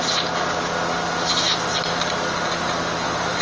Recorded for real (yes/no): yes